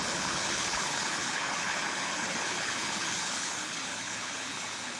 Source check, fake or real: fake